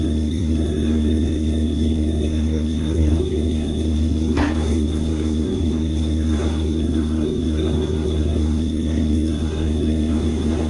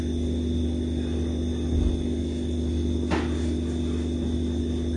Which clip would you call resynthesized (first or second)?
first